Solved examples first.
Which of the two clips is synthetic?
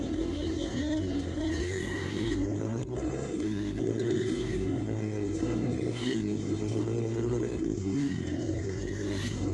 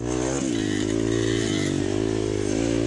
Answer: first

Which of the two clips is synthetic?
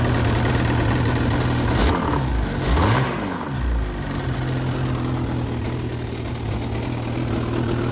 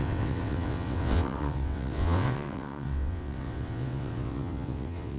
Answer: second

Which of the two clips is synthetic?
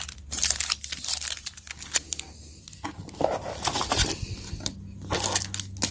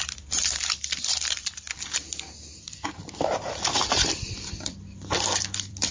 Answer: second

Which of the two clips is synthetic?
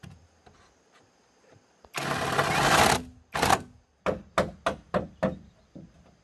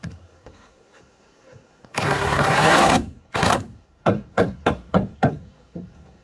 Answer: second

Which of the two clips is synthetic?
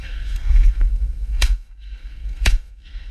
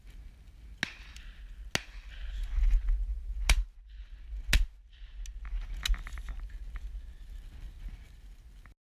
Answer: first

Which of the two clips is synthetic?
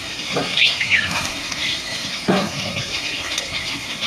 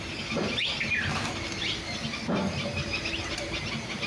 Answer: first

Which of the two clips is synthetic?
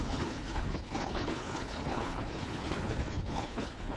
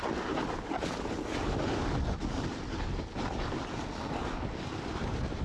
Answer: first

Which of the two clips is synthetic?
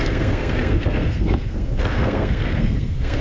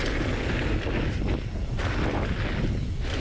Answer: first